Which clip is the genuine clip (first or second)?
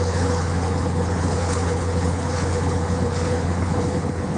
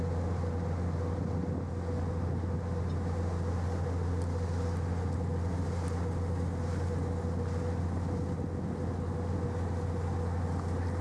second